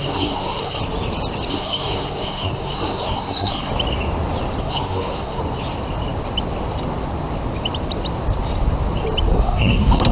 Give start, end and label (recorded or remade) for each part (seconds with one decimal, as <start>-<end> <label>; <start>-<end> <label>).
0.0-0.8 remade; 0.8-1.5 recorded; 1.5-3.7 remade; 3.7-4.6 recorded; 4.6-5.4 remade; 5.4-9.3 recorded; 9.3-10.1 remade